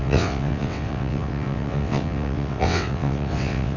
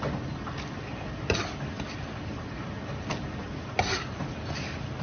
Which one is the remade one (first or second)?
first